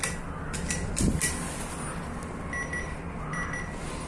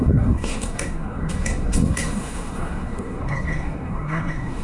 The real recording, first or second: first